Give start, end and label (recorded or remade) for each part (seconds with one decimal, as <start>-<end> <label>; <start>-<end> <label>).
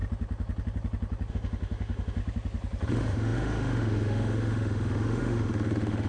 0.0-1.3 recorded; 1.3-2.2 remade; 2.2-2.9 recorded; 2.9-6.1 remade